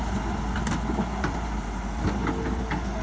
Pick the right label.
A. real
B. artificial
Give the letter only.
A